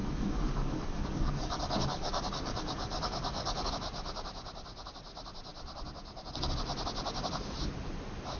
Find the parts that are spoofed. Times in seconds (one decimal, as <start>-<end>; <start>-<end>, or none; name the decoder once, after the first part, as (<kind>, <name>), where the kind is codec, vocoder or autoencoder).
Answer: 0.0-3.7 (codec, DAC)